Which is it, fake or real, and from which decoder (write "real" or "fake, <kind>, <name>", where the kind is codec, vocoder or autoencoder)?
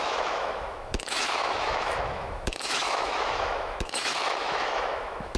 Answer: fake, autoencoder, DAC-VAE